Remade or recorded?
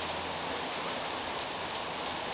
remade